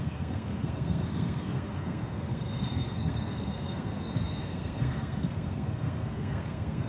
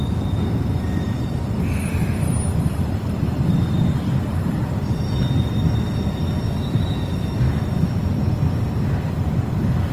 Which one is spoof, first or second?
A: first